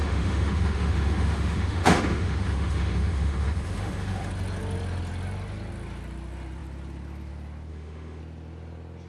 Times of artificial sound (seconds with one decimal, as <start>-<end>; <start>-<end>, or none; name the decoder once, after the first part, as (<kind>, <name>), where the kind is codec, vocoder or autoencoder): 0.0-4.3 (autoencoder, DAC-VAE); 7.7-8.2